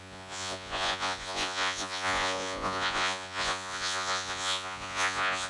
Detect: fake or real fake